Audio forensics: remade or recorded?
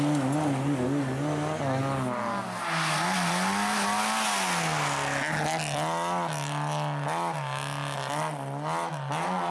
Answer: recorded